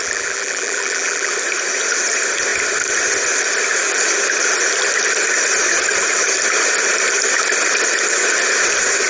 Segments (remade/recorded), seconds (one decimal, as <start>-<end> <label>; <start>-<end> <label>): 0.0-1.3 remade; 1.3-9.1 recorded